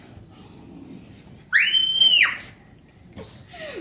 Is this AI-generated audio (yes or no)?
no